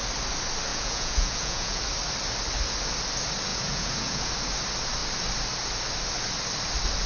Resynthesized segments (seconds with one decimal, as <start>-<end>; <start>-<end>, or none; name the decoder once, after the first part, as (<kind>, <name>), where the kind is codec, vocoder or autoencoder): 0.7-1.8 (vocoder, Vocos); 3.5-4.3